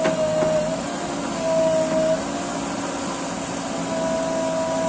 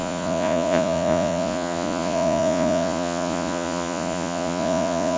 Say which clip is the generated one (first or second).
second